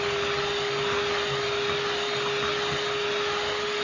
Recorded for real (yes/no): yes